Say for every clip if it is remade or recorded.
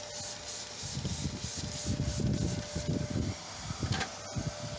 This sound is recorded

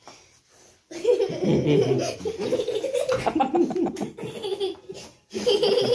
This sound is recorded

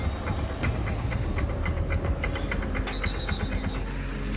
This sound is recorded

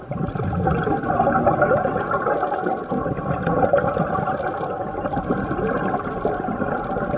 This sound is recorded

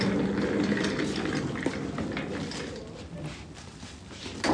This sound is recorded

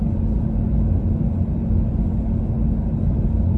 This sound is recorded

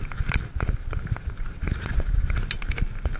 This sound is recorded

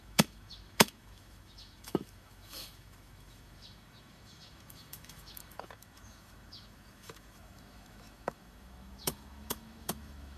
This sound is remade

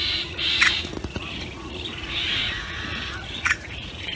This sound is remade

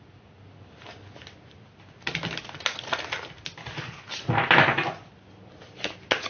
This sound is recorded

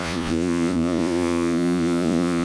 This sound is remade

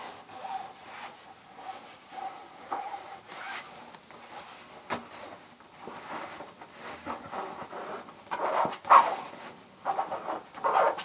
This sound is recorded